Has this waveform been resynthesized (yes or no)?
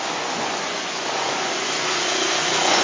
yes